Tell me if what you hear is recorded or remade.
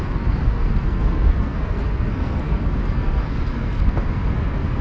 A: remade